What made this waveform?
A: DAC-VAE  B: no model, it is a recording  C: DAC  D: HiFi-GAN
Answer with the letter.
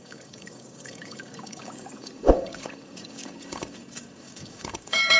C